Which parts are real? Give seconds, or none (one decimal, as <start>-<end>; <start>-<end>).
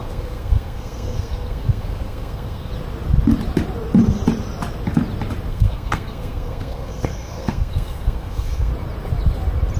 2.7-5.5; 8.7-9.8